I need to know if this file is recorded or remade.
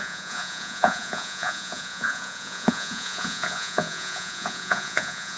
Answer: remade